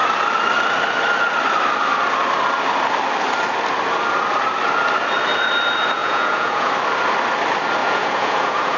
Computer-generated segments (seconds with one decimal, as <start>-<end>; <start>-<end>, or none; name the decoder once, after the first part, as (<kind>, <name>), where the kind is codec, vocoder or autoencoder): 6.0-6.7 (vocoder, Vocos); 7.8-8.8